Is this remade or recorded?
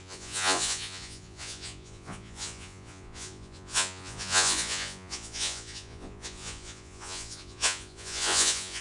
remade